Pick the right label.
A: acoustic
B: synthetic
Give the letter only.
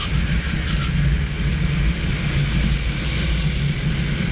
A